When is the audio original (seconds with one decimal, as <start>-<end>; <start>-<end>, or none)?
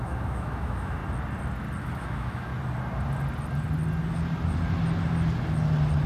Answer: 1.0-1.8; 2.5-6.1